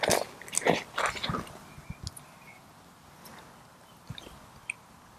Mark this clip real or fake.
real